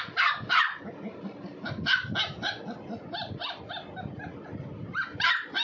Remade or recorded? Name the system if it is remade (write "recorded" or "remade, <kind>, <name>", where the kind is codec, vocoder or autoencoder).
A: recorded